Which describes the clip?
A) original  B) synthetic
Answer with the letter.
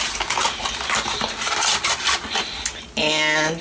A